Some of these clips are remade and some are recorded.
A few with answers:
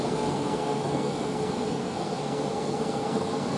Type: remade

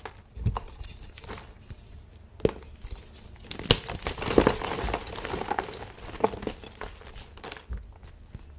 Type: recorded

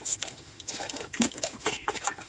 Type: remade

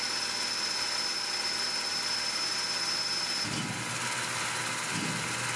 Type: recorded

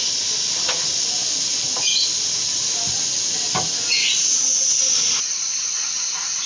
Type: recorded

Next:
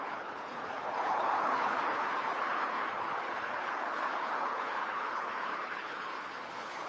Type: remade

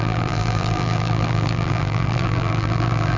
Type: remade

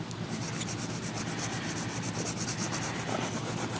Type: recorded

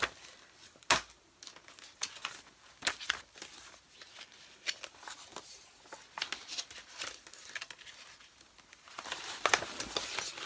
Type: recorded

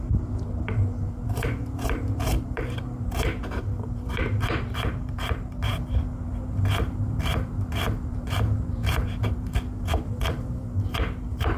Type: remade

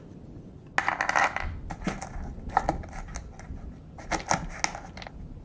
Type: recorded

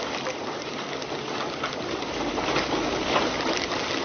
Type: recorded